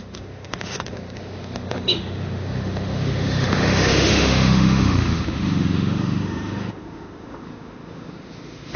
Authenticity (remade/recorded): remade